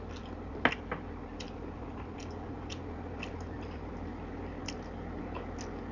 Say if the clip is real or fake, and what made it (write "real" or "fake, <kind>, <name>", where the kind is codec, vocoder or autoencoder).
real